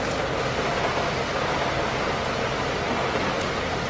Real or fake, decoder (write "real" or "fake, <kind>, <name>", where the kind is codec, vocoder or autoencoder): real